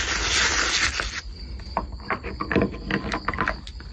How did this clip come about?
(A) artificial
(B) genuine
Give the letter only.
B